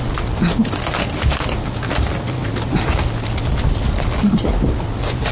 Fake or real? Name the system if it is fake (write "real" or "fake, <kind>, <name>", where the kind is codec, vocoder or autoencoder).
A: real